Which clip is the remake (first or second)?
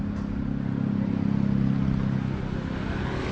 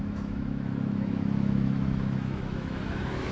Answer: second